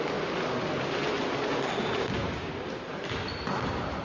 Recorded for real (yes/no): yes